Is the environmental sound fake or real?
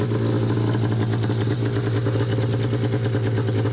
real